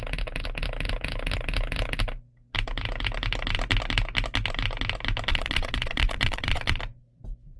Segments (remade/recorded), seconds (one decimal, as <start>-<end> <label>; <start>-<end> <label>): 0.0-5.3 recorded; 5.3-6.8 remade; 6.8-7.6 recorded